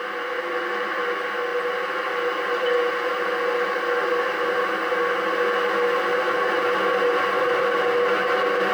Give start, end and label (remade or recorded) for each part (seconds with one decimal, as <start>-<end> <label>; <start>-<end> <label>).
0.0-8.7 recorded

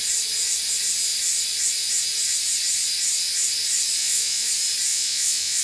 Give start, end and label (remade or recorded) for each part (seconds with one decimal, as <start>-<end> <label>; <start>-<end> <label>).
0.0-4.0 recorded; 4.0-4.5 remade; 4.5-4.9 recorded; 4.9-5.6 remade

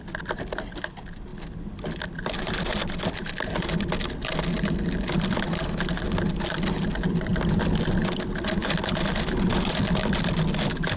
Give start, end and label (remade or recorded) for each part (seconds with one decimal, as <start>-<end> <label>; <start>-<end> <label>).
0.0-11.0 recorded

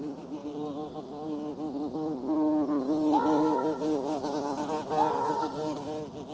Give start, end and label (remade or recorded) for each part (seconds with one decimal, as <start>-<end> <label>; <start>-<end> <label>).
0.0-6.3 recorded

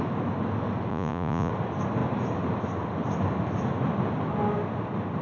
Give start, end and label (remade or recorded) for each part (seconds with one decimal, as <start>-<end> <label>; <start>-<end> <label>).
0.0-0.9 recorded; 0.9-1.5 remade; 1.5-5.2 recorded